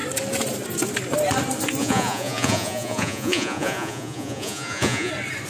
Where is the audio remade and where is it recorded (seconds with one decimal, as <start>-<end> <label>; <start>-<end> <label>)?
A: 0.0-1.8 recorded; 1.8-5.1 remade; 5.1-5.5 recorded